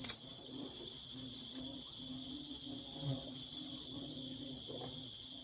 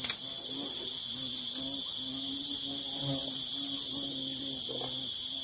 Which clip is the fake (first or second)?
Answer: first